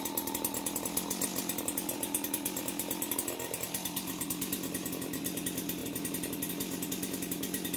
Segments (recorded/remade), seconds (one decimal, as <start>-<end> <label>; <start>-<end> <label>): 0.0-7.8 recorded